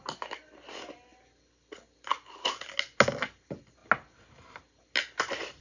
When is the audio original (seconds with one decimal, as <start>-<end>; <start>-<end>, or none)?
0.0-5.6